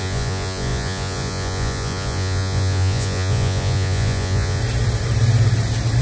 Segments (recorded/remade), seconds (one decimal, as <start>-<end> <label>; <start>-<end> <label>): 0.0-4.6 remade; 4.6-6.0 recorded